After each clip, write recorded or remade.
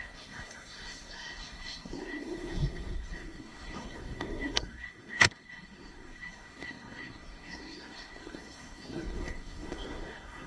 remade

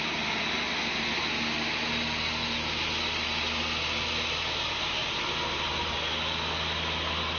recorded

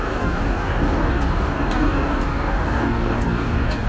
remade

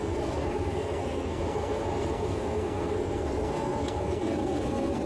remade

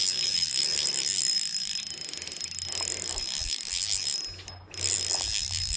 recorded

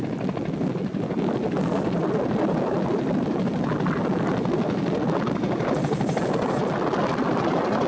recorded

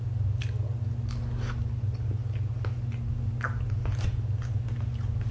recorded